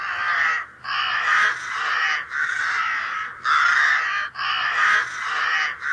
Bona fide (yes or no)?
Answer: yes